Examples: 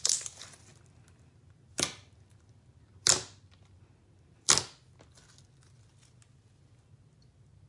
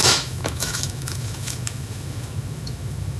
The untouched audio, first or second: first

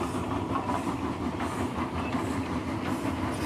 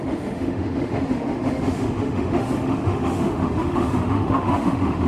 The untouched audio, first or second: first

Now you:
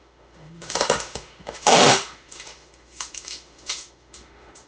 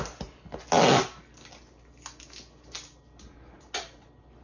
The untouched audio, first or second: second